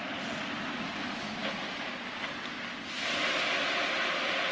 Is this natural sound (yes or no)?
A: yes